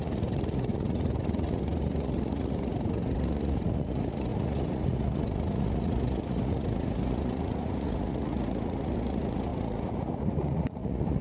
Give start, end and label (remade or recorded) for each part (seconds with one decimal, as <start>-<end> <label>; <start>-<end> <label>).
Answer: 0.0-11.2 remade